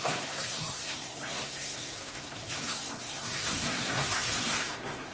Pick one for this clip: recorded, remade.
remade